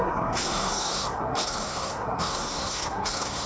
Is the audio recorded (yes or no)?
no